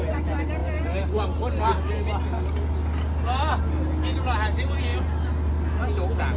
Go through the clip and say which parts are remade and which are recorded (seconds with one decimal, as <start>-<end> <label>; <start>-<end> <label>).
0.0-6.4 recorded